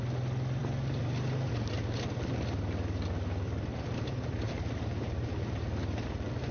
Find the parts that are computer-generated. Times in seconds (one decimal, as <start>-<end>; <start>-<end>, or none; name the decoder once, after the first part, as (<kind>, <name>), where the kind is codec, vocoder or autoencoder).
3.7-5.3 (vocoder, BigVGAN v2)